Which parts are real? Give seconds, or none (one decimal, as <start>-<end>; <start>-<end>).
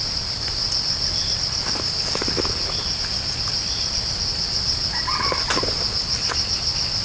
0.0-7.0